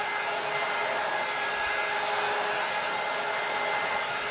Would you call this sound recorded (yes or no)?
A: yes